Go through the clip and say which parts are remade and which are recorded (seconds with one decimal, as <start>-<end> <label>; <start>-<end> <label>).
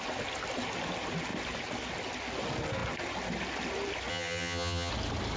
0.0-4.1 recorded; 4.1-4.9 remade; 4.9-5.4 recorded